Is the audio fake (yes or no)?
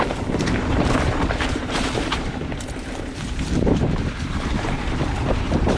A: yes